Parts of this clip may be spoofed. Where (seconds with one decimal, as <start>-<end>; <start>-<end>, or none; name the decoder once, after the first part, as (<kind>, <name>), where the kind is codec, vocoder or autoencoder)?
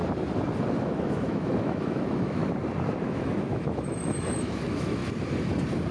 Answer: 0.8-2.4 (autoencoder, DAC-VAE); 3.0-5.0